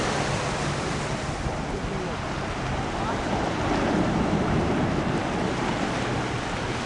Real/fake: real